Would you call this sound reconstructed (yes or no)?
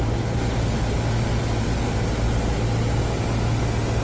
no